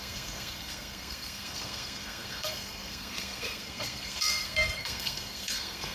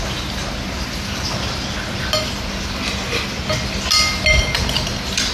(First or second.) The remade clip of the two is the first